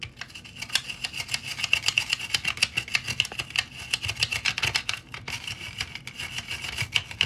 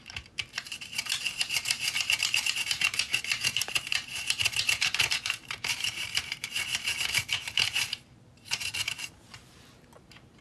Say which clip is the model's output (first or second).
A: second